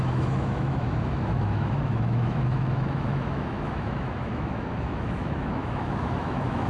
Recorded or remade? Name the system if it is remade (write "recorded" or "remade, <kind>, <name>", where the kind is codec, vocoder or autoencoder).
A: remade, autoencoder, DAC-VAE